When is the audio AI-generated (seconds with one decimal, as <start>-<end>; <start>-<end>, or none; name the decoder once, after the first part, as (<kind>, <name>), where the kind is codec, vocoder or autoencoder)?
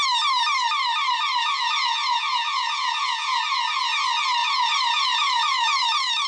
1.4-3.4 (vocoder, Vocos); 4.4-6.3